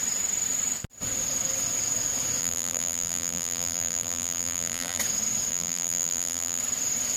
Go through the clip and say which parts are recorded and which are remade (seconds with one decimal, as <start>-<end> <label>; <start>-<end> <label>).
0.0-2.4 recorded; 2.4-5.0 remade; 5.0-5.5 recorded; 5.5-6.6 remade; 6.6-7.2 recorded